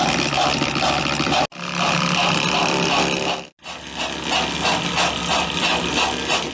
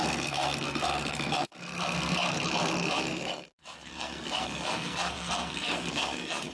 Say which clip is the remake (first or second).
second